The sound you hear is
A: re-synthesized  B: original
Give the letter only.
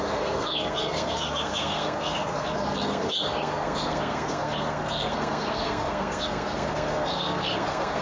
A